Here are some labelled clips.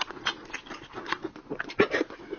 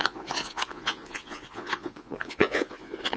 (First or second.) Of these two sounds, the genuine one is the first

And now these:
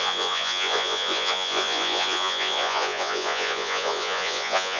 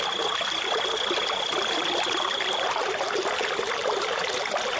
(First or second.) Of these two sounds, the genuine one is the second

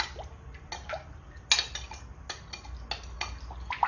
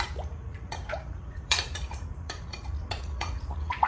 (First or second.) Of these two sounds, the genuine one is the first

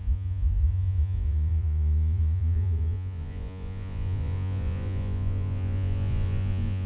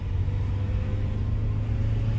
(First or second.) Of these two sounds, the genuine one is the second